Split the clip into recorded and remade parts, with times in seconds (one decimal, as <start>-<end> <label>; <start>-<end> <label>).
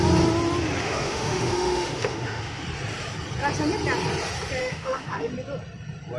0.0-0.8 recorded; 0.8-2.6 remade; 2.6-4.6 recorded; 4.6-5.3 remade; 5.3-6.2 recorded